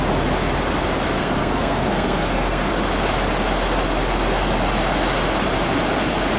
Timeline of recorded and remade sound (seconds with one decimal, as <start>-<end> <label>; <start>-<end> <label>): 0.0-1.2 recorded; 1.2-2.7 remade; 2.7-6.4 recorded